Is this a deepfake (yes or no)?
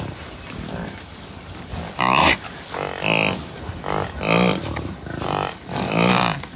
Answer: no